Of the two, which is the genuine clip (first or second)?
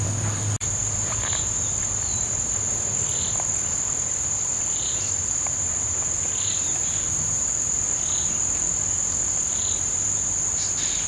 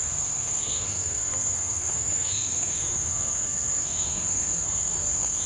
first